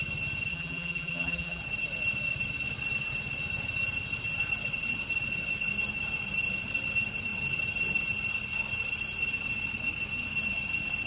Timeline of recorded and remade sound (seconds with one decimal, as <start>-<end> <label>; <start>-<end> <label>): 0.0-0.5 recorded; 0.5-1.6 remade; 1.6-11.1 recorded

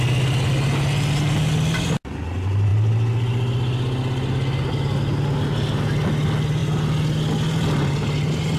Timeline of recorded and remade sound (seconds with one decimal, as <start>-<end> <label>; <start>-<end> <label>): 0.0-8.6 recorded

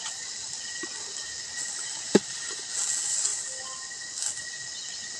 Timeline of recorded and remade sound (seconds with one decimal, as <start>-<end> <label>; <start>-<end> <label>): 0.0-3.3 recorded; 3.3-4.2 remade; 4.2-5.2 recorded

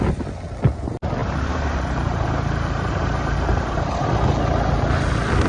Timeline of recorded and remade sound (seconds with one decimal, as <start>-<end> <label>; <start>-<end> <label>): 0.0-1.2 recorded; 1.2-4.1 remade; 4.1-5.5 recorded

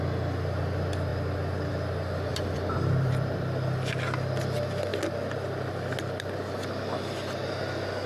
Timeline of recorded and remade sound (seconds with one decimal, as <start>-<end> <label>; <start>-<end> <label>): 0.0-2.3 recorded; 2.3-3.1 remade; 3.1-8.1 recorded

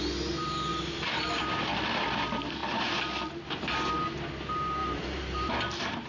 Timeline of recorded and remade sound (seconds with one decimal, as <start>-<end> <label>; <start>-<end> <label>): 0.0-0.7 recorded; 0.7-1.4 remade; 1.4-4.8 recorded; 4.8-5.5 remade; 5.5-6.1 recorded

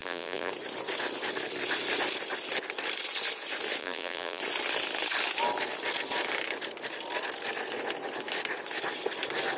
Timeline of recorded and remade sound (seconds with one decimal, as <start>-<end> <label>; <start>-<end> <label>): 0.0-0.5 remade; 0.5-3.8 recorded; 3.8-4.4 remade; 4.4-9.6 recorded